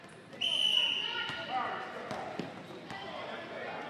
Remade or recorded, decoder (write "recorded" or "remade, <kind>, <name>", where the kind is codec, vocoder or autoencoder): recorded